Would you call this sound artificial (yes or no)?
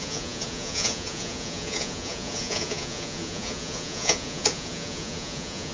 yes